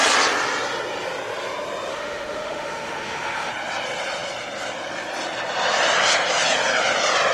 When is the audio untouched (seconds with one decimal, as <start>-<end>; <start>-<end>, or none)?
0.0-1.9; 3.5-7.3

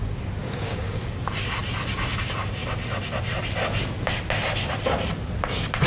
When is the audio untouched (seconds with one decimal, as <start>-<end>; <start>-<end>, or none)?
0.0-0.4; 1.0-5.9

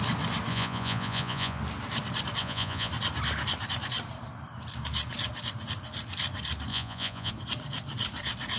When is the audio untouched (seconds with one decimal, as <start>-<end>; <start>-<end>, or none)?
0.0-0.5; 1.6-2.4; 2.9-6.7; 7.3-8.6

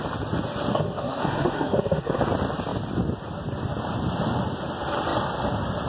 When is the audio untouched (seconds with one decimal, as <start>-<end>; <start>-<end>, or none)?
0.0-0.7; 2.2-5.9